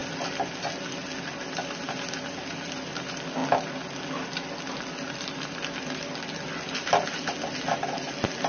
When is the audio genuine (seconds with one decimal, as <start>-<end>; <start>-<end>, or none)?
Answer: 0.0-8.5